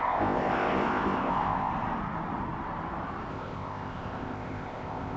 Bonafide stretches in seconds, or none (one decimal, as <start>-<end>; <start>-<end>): 1.7-3.3